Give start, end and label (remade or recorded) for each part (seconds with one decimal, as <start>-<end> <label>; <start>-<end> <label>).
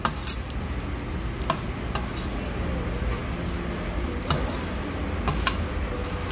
0.0-6.3 recorded